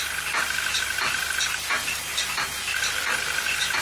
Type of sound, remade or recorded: recorded